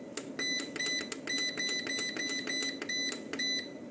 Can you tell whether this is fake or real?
real